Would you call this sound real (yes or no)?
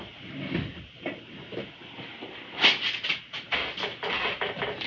yes